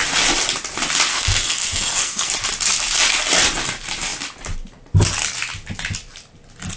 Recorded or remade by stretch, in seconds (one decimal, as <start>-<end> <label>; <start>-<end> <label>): 0.0-1.1 recorded; 1.1-2.3 remade; 2.3-6.8 recorded